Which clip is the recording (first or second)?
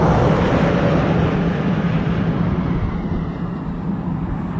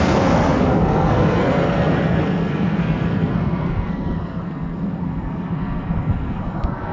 first